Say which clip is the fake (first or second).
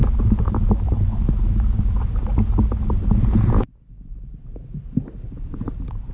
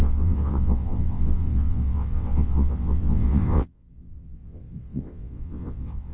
second